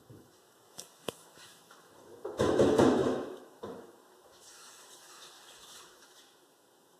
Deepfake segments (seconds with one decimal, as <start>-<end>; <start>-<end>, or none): 0.0-7.0